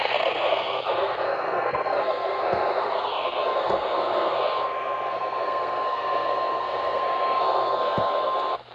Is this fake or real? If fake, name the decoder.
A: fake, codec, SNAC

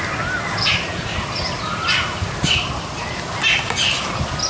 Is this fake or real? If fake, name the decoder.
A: real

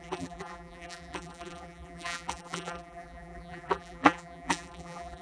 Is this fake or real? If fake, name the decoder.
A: fake, vocoder, BigVGAN v2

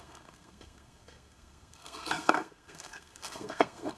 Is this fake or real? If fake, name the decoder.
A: fake, codec, SNAC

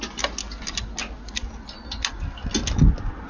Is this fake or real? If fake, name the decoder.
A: real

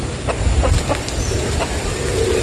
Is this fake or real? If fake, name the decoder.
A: real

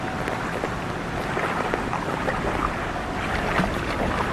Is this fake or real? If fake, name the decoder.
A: real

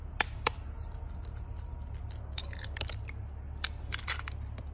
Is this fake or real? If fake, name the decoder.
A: real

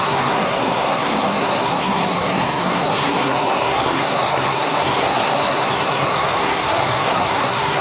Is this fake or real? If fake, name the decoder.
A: fake, codec, SNAC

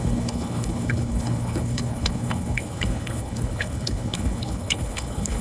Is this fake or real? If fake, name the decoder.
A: fake, codec, HILCodec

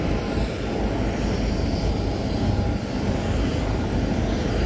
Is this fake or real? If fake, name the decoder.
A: real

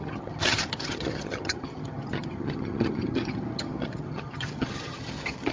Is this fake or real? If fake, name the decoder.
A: fake, vocoder, HiFi-GAN